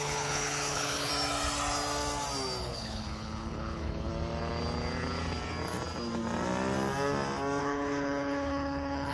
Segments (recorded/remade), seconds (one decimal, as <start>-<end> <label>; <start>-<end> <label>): 0.0-1.1 remade; 1.1-2.6 recorded; 2.6-4.1 remade; 4.1-7.6 recorded; 7.6-9.1 remade